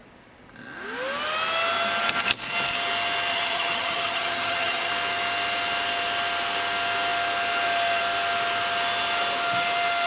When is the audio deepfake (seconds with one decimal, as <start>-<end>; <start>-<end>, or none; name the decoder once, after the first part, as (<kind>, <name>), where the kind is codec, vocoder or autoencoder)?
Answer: 3.3-4.9 (vocoder, HiFi-GAN)